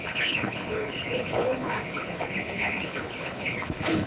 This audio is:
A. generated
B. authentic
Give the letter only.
A